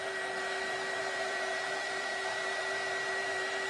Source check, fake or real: fake